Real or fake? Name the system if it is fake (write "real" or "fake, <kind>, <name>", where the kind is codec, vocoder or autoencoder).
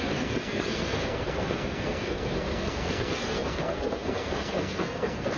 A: fake, codec, SNAC